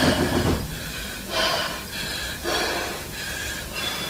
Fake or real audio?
real